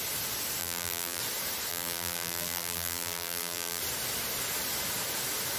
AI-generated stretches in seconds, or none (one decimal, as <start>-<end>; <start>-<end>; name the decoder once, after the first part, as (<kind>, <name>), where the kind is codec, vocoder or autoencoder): 0.6-1.2 (vocoder, BigVGAN v2); 1.7-3.8